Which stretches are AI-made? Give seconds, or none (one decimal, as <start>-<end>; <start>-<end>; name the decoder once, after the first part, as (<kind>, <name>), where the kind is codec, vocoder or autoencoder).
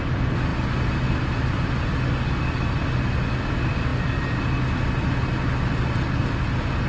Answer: none